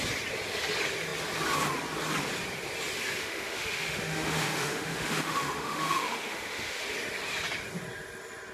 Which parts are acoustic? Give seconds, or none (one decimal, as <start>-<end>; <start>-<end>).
0.0-3.2; 6.8-8.5